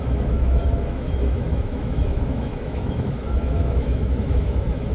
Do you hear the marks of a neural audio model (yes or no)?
yes